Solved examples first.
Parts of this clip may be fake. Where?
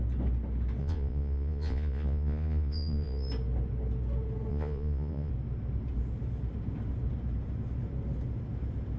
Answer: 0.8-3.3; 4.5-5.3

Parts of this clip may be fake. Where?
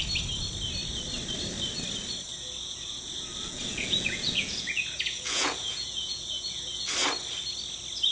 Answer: 2.3-6.9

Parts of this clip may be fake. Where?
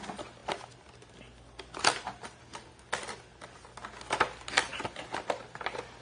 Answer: none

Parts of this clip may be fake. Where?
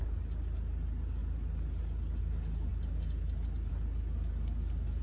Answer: none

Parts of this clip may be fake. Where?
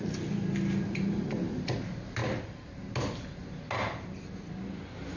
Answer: none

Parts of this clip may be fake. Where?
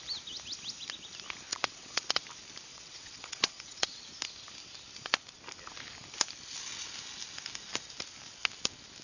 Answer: 1.5-2.0; 2.7-4.0